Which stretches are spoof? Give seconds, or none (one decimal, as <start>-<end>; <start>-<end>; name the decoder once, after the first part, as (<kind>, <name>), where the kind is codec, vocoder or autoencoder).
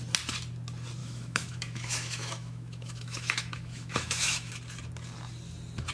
1.0-4.5 (autoencoder, DAC-VAE)